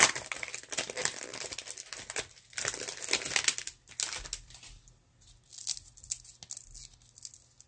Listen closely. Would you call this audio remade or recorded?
recorded